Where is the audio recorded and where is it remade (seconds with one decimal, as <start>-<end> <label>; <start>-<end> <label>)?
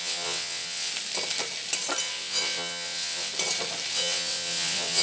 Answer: 0.0-0.9 remade; 0.9-2.0 recorded; 2.0-3.3 remade; 3.3-3.9 recorded; 3.9-5.0 remade